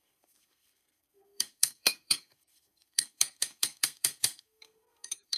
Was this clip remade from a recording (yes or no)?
yes